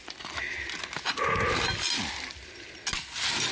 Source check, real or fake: real